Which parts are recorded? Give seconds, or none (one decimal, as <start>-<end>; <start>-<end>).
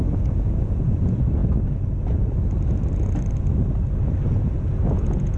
1.4-4.6